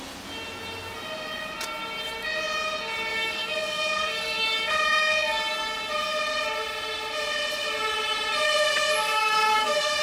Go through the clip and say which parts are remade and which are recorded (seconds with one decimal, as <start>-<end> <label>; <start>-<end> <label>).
0.0-3.1 recorded; 3.1-5.9 remade; 5.9-9.1 recorded; 9.1-10.0 remade